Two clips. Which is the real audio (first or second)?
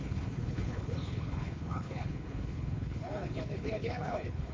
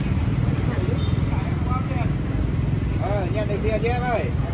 second